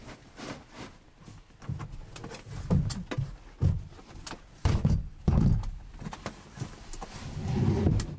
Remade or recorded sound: recorded